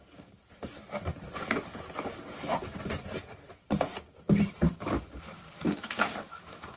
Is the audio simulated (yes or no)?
no